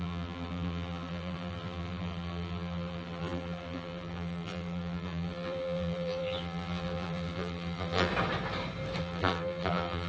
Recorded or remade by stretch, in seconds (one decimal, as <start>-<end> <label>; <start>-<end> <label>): 0.0-8.1 remade; 8.1-9.0 recorded; 9.0-10.1 remade